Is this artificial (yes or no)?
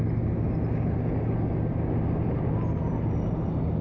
no